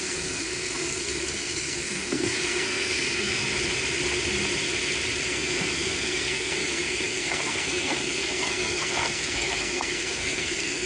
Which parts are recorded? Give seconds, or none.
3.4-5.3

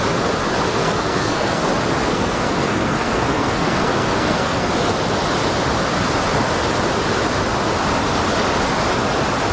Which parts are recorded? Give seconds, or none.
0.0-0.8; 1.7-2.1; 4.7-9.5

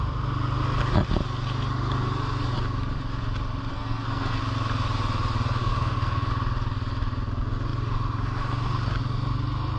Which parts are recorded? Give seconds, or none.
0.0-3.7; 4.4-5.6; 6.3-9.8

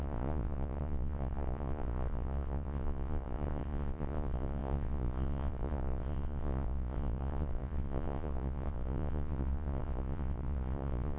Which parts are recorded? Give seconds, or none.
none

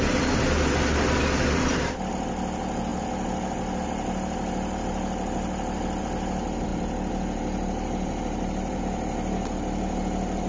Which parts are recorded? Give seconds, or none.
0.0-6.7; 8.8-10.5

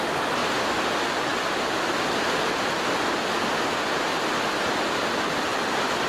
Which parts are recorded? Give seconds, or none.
0.0-6.1